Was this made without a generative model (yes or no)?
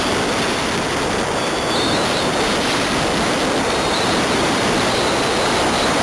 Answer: no